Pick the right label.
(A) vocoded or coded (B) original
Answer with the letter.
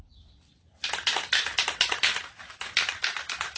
B